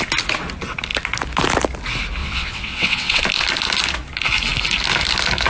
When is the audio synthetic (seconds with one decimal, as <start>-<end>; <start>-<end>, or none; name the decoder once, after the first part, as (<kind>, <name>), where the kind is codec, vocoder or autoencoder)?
2.2-3.2 (vocoder, WaveNeXt)